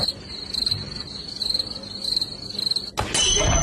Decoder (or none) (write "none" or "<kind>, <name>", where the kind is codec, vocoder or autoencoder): none